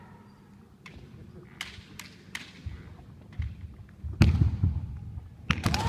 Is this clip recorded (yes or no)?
yes